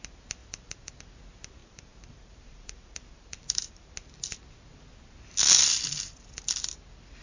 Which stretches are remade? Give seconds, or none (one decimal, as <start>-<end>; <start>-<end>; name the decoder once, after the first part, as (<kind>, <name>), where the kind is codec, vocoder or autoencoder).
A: 0.4-0.9 (vocoder, BigVGAN v2); 1.6-3.9